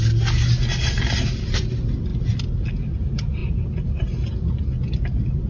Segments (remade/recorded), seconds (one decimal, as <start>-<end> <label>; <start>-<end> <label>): 0.0-5.5 recorded